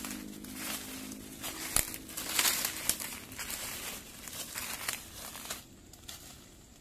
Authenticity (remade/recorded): recorded